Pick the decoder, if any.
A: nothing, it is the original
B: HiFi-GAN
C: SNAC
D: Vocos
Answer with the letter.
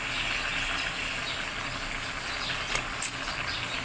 A